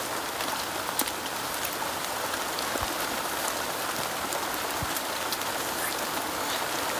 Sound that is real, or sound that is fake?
real